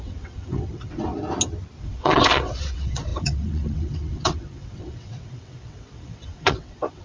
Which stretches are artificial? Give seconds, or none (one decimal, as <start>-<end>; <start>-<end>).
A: 0.0-1.1; 1.8-7.0